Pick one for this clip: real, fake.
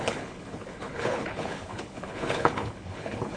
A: fake